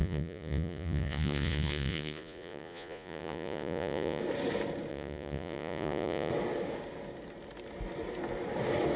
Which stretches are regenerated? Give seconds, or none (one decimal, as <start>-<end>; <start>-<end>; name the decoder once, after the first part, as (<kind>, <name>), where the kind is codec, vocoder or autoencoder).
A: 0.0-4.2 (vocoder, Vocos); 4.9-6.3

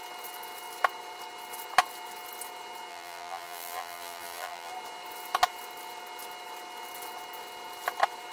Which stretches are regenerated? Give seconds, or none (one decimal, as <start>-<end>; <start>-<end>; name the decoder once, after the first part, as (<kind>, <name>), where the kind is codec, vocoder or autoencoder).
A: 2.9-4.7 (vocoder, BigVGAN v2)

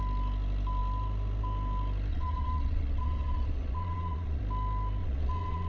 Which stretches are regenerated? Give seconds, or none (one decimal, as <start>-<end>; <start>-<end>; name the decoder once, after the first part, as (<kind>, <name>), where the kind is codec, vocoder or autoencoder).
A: 2.1-4.4 (vocoder, Vocos); 5.0-5.7